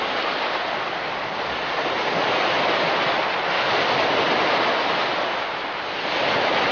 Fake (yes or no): no